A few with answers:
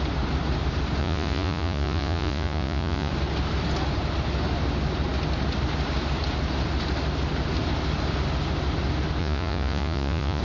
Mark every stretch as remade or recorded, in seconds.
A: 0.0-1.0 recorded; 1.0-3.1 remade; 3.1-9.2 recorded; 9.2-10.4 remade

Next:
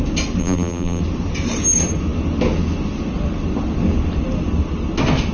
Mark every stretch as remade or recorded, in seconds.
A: 0.0-0.4 recorded; 0.4-1.0 remade; 1.0-5.3 recorded

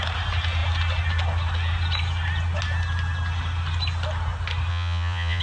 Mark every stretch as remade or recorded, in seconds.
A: 0.0-4.7 recorded; 4.7-5.4 remade

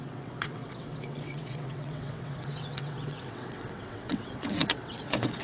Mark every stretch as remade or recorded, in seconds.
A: 0.0-5.4 remade

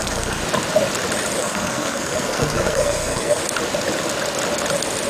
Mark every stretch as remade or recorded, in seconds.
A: 0.0-0.4 remade; 0.4-1.4 recorded; 1.4-3.4 remade; 3.4-5.1 recorded